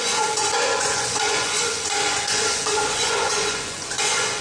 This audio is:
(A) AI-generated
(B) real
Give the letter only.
A